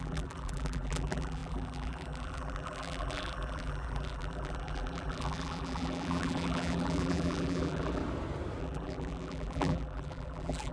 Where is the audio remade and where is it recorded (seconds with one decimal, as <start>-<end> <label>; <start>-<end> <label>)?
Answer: 0.0-8.0 remade; 8.0-8.6 recorded; 8.6-10.7 remade